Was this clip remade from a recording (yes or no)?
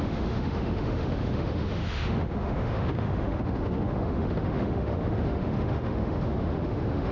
yes